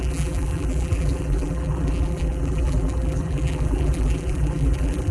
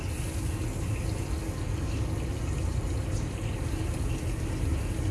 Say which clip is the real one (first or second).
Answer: second